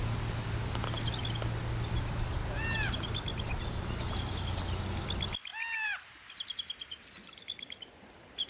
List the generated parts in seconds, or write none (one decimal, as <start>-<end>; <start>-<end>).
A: none